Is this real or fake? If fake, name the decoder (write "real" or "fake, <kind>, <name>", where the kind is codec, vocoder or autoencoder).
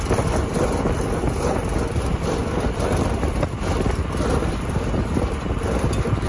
real